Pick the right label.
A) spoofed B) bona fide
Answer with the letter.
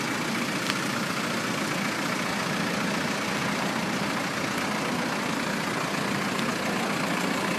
B